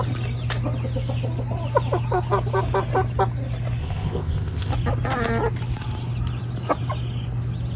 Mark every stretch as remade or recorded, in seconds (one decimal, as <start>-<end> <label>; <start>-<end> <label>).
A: 0.0-3.8 recorded; 3.8-4.7 remade; 4.7-7.8 recorded